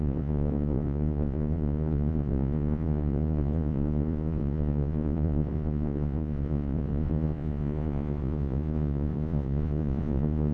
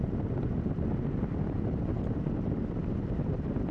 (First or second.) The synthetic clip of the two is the first